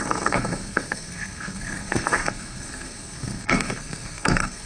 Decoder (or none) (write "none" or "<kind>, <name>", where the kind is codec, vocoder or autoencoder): codec, SNAC